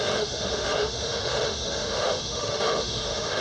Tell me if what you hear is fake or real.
fake